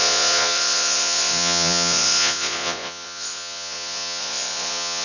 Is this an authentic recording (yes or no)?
no